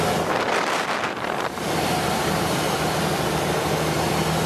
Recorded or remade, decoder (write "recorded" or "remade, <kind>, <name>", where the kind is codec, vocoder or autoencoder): remade, vocoder, BigVGAN v2